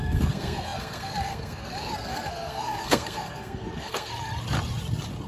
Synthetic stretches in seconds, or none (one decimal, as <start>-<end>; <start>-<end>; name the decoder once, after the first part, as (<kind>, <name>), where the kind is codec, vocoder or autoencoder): 0.0-4.1 (codec, SNAC)